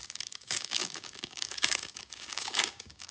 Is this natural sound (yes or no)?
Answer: no